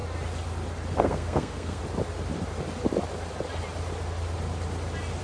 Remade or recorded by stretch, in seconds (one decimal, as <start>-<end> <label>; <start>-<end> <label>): 0.0-0.9 recorded; 0.9-1.8 remade; 1.8-5.2 recorded